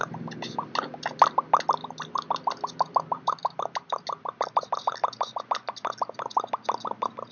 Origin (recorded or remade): recorded